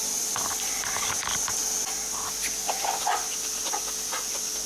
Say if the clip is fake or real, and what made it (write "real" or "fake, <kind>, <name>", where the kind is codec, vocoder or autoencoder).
real